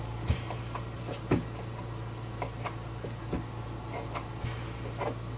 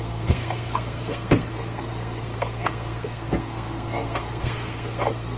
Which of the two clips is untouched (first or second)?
first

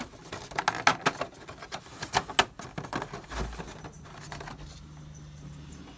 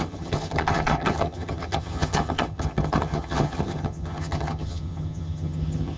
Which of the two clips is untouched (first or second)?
first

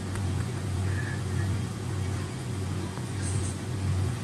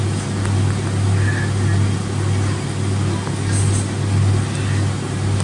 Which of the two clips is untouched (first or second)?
second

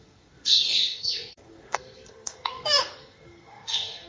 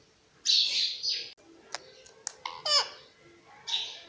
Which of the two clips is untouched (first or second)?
second